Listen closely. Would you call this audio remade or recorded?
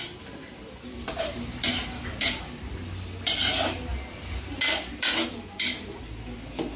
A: recorded